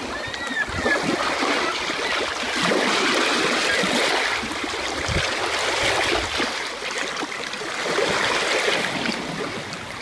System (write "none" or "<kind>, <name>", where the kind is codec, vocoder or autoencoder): none